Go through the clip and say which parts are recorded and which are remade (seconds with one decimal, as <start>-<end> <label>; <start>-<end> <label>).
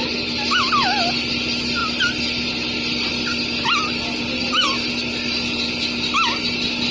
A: 0.0-6.9 recorded